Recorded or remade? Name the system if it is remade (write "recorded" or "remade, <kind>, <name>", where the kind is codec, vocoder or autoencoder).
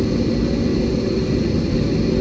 recorded